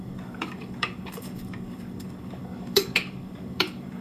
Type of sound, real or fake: fake